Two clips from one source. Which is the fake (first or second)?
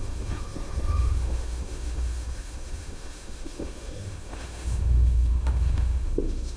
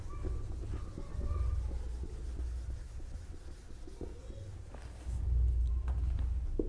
first